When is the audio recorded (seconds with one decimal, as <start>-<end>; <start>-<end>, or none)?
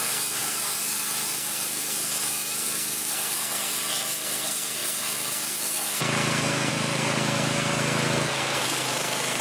none